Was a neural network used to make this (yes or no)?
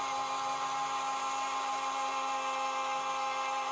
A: no